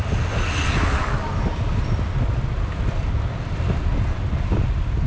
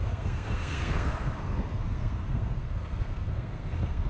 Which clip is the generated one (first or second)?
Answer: second